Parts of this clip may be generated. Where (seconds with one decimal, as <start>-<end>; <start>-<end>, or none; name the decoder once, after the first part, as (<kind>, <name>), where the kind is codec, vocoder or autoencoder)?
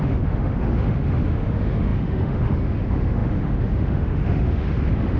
0.0-5.2 (autoencoder, DAC-VAE)